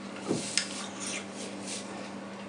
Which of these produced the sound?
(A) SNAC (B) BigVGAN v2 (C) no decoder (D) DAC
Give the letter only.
C